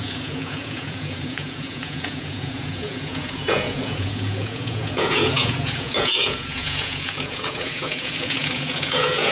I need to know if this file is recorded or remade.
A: remade